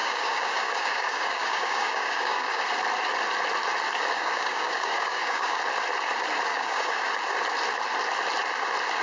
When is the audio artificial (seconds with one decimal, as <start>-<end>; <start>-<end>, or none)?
0.0-2.6; 4.1-5.6; 6.5-7.1